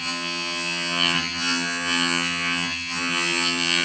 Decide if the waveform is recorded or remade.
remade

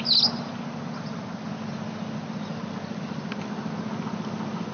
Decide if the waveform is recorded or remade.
recorded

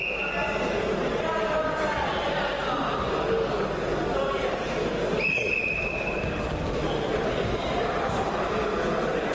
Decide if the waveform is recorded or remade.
recorded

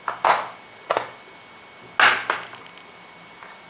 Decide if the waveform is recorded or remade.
recorded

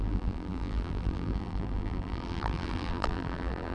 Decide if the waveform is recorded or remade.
remade